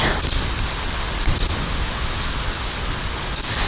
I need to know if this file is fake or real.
fake